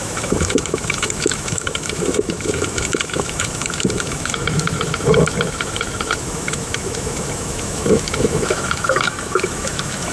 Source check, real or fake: fake